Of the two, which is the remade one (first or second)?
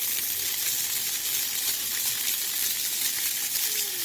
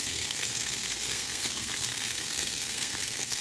second